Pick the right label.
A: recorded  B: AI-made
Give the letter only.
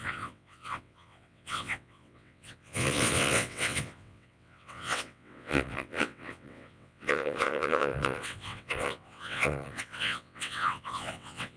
B